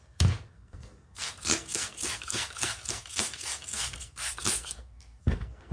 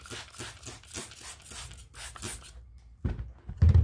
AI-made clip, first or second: first